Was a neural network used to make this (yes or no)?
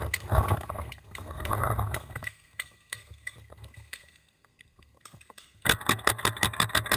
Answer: yes